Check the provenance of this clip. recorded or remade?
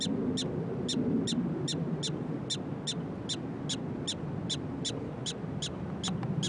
recorded